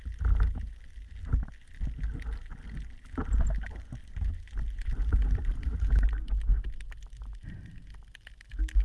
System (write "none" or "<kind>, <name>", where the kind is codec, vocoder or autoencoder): none